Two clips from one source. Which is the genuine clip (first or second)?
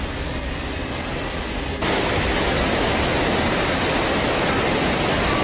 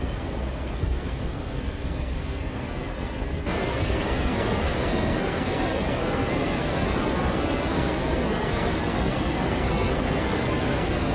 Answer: first